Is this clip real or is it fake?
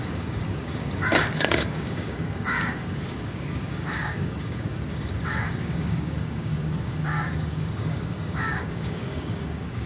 fake